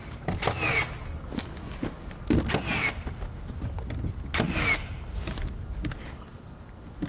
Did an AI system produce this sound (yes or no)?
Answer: no